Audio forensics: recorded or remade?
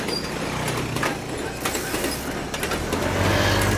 recorded